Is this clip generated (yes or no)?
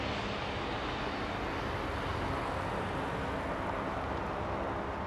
no